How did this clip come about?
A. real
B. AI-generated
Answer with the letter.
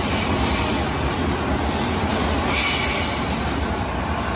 A